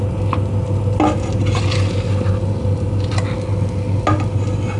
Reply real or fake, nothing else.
real